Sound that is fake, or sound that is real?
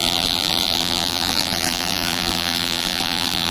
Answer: fake